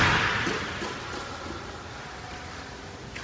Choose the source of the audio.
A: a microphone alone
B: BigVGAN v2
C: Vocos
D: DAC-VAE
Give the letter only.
A